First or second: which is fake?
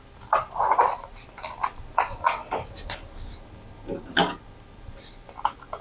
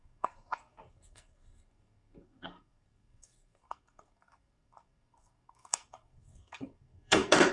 second